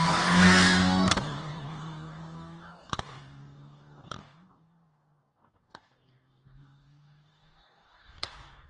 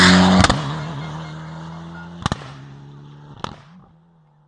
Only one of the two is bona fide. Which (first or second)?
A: second